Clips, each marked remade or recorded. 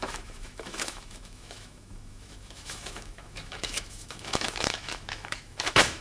remade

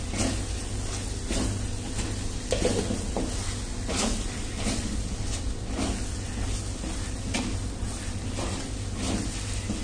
recorded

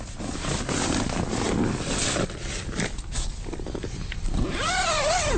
recorded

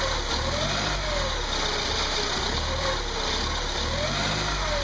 recorded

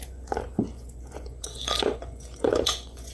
remade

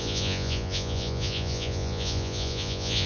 remade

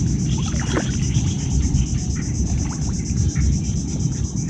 recorded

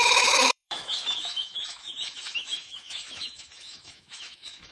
remade